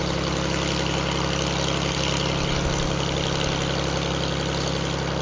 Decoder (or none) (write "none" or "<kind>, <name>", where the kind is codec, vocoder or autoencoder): none